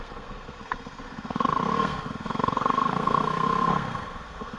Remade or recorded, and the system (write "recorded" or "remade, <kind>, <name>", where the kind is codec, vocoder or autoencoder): remade, codec, SNAC